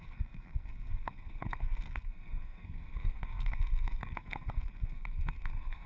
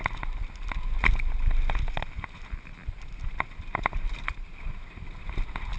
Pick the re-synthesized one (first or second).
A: first